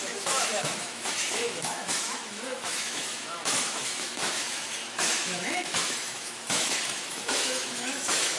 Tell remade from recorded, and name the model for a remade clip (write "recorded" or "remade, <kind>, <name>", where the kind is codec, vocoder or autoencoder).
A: remade, autoencoder, DAC-VAE